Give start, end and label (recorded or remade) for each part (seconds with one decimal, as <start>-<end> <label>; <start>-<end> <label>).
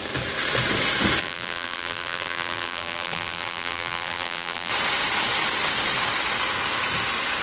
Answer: 0.0-1.2 recorded; 1.2-4.7 remade; 4.7-7.4 recorded